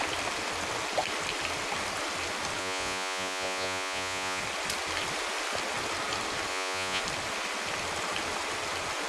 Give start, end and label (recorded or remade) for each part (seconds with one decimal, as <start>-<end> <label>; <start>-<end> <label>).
0.0-2.6 recorded; 2.6-4.4 remade; 4.4-6.5 recorded; 6.5-7.0 remade; 7.0-9.1 recorded